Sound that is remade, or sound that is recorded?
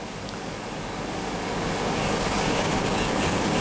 remade